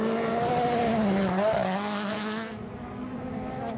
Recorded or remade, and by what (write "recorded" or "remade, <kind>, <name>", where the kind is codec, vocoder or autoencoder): recorded